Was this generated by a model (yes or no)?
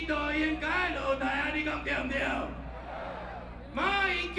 no